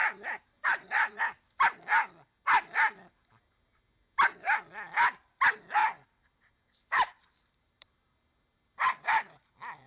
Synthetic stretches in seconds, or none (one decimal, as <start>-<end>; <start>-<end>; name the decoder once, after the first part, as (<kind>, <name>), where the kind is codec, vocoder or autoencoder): 0.0-1.2 (vocoder, BigVGAN v2); 5.8-9.5